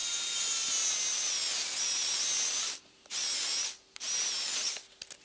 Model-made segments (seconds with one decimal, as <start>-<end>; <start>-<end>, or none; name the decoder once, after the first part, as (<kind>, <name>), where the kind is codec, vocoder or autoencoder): none